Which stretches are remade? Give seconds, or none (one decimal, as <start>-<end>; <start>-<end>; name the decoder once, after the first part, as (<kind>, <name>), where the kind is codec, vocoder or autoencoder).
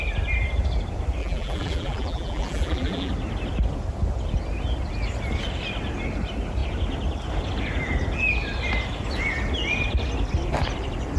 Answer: 1.2-3.1 (vocoder, BigVGAN v2)